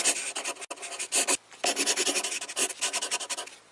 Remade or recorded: recorded